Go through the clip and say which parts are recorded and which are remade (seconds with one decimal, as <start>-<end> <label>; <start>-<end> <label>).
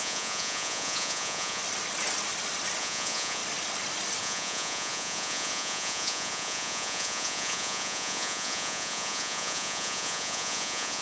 0.0-1.6 remade; 1.6-2.8 recorded; 2.8-3.4 remade; 3.4-4.2 recorded; 4.2-11.0 remade